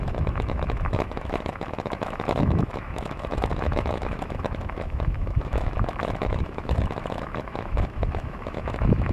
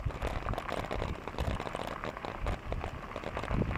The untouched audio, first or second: second